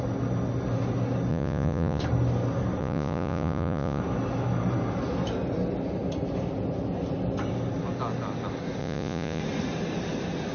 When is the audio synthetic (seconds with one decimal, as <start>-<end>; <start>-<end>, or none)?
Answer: 1.3-2.0; 2.8-4.0; 8.8-9.4